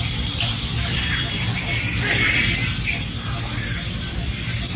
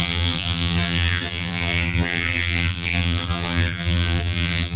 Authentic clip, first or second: first